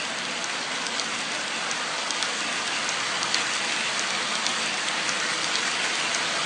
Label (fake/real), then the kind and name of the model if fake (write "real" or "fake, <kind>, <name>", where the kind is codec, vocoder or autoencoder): real